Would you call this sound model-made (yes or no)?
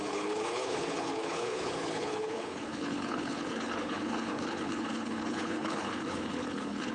yes